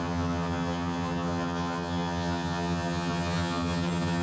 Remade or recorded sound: remade